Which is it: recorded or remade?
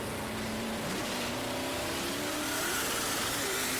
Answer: remade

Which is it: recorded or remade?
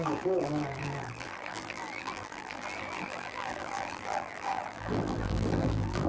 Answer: remade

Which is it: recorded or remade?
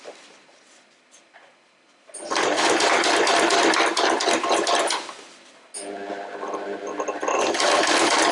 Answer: recorded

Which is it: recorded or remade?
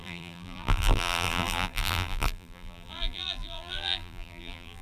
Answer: remade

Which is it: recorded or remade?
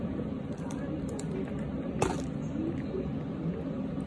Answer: remade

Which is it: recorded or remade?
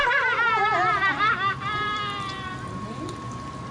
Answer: recorded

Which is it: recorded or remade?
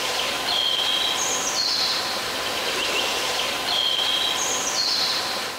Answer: recorded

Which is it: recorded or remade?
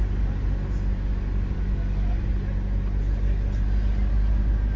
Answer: recorded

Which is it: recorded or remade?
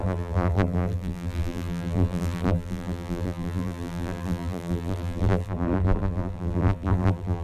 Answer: remade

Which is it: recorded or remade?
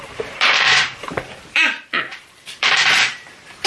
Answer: remade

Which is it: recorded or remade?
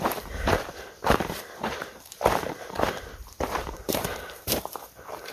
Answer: remade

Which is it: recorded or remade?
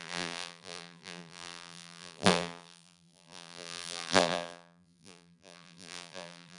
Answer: remade